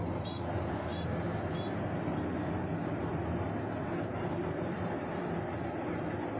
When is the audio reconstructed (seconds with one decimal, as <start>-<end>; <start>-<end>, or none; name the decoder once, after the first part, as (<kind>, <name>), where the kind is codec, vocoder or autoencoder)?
0.0-0.9 (vocoder, BigVGAN v2); 2.5-3.1; 4.1-6.4